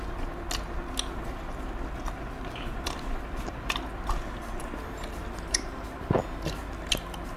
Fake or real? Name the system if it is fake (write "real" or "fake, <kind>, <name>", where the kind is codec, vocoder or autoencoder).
real